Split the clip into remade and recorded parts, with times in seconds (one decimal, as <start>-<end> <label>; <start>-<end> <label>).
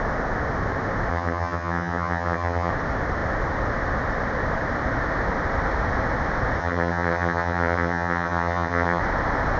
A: 0.0-1.1 recorded; 1.1-2.7 remade; 2.7-6.6 recorded; 6.6-9.0 remade; 9.0-9.6 recorded